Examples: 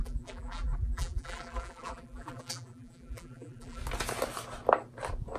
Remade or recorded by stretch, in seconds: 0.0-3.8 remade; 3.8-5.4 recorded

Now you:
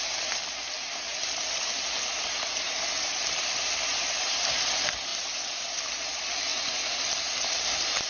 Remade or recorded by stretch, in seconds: 0.0-1.1 recorded; 1.1-4.3 remade; 4.3-5.1 recorded; 5.1-5.7 remade; 5.7-6.5 recorded; 6.5-8.1 remade